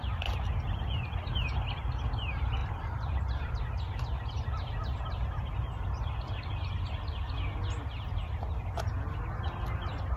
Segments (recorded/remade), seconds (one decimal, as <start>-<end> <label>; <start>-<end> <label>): 0.0-2.6 recorded; 2.6-3.6 remade; 3.6-10.2 recorded